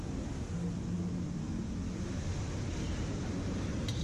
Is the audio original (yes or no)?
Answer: yes